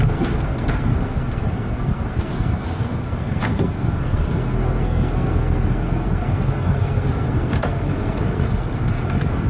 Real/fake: fake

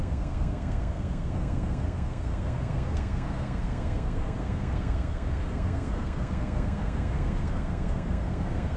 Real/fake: fake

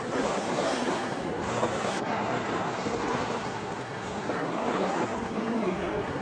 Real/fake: fake